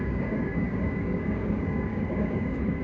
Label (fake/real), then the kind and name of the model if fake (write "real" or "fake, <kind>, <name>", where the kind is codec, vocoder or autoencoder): fake, codec, DAC